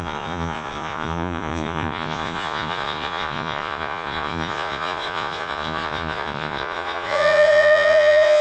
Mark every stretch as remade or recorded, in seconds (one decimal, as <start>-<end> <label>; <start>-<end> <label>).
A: 0.0-8.4 remade